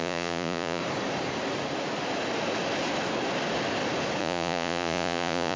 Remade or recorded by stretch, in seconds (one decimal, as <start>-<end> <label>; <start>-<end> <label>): 0.0-0.8 remade; 0.8-4.2 recorded; 4.2-5.6 remade